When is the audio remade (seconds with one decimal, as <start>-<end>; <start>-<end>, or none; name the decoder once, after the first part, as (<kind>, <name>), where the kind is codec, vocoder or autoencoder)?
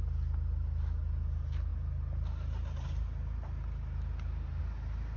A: none